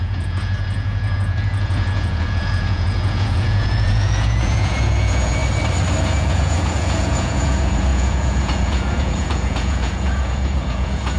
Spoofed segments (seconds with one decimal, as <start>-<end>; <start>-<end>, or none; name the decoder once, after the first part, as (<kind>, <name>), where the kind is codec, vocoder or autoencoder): 0.0-5.4 (vocoder, Vocos); 6.0-11.2